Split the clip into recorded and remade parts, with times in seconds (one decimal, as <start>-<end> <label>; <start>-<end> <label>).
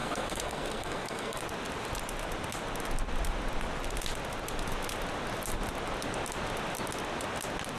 0.0-1.4 remade; 1.4-7.8 recorded